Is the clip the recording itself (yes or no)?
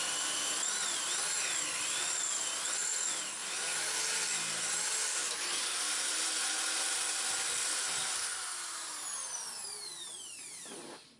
yes